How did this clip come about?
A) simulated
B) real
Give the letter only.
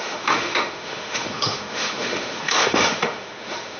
A